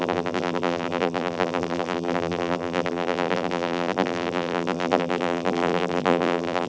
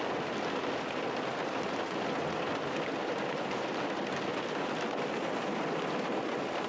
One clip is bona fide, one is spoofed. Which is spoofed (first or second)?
first